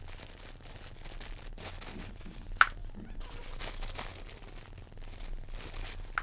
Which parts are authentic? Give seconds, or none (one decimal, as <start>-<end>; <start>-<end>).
0.0-6.2